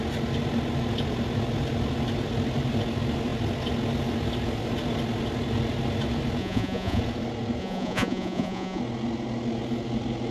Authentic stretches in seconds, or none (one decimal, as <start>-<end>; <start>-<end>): 0.0-6.4; 7.0-7.6; 8.8-10.3